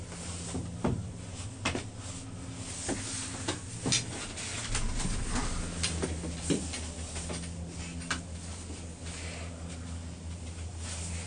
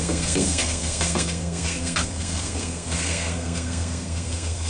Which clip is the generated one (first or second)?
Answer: second